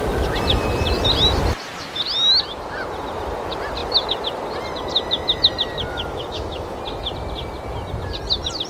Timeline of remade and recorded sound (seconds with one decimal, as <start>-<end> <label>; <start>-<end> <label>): 0.0-5.9 recorded; 5.9-6.8 remade; 6.8-8.7 recorded